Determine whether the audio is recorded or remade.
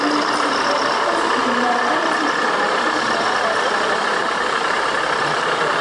remade